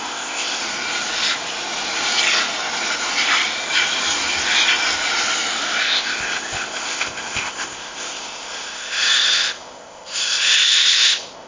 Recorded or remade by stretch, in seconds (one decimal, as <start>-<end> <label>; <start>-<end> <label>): 0.0-0.6 remade; 0.6-5.8 recorded; 5.8-11.5 remade